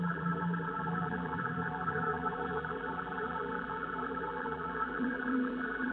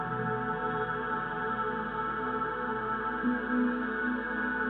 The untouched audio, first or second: second